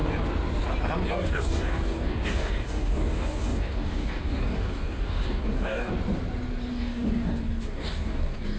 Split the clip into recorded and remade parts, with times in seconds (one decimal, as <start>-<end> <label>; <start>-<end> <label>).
0.0-1.1 recorded; 1.1-5.9 remade; 5.9-6.7 recorded; 6.7-8.6 remade